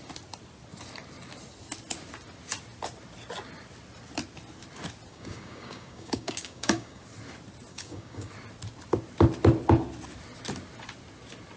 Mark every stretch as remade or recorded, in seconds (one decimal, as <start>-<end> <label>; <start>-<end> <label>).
0.0-5.1 recorded; 5.1-7.0 remade; 7.0-7.7 recorded; 7.7-8.3 remade; 8.3-11.6 recorded